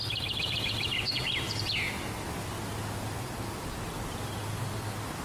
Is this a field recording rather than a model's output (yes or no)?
yes